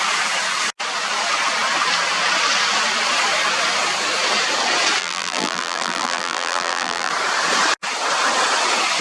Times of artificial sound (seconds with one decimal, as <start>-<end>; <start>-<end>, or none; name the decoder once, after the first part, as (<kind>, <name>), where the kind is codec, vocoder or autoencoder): 5.0-7.1 (vocoder, BigVGAN v2)